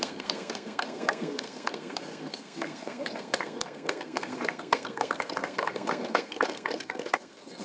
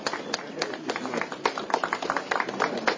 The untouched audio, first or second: second